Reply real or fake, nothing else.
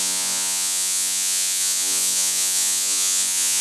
fake